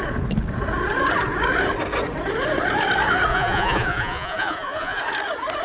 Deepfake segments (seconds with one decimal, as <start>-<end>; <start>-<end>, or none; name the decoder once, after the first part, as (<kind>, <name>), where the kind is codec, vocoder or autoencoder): 3.3-5.0 (vocoder, Vocos)